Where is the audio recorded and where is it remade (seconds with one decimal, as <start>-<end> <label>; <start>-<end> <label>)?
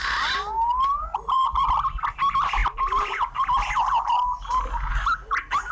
0.0-1.0 recorded; 1.0-1.6 remade; 1.6-5.7 recorded